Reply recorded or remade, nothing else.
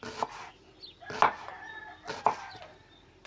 recorded